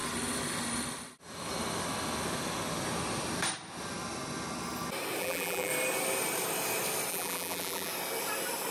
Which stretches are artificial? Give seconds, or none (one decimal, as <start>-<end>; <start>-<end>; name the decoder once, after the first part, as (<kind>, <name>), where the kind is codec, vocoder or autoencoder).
5.2-5.7 (vocoder, BigVGAN v2); 7.1-7.9